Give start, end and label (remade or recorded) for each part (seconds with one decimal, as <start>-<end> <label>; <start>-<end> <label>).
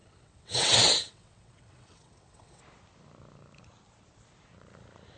0.0-2.6 remade; 2.6-5.2 recorded